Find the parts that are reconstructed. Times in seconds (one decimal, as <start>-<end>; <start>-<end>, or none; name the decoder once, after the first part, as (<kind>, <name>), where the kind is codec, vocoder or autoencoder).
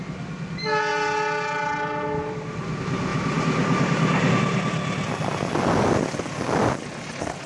none